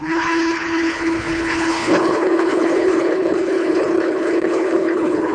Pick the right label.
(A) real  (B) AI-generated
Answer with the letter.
B